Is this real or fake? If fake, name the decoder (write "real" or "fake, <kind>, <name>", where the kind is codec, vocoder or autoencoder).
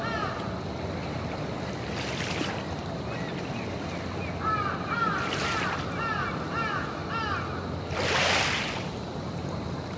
real